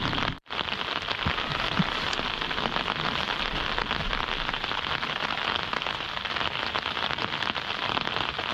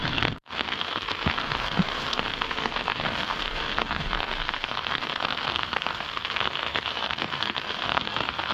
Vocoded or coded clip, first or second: second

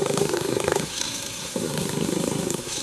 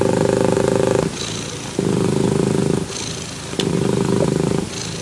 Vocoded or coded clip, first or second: first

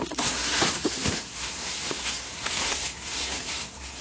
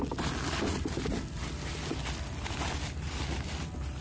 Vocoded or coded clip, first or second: first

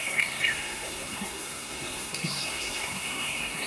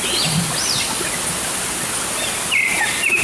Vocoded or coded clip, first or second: first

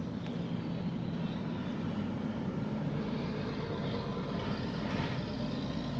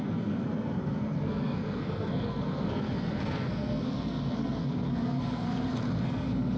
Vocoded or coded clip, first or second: second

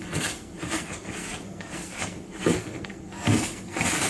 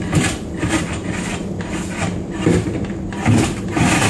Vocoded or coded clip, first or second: first